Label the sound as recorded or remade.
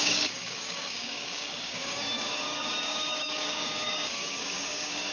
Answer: remade